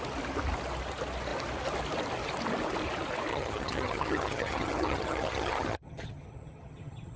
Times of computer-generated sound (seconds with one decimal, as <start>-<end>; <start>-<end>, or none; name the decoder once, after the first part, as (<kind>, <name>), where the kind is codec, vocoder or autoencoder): 3.3-7.2 (vocoder, HiFi-GAN)